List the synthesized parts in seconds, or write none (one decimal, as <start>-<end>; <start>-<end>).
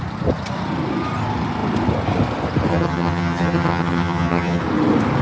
2.7-4.6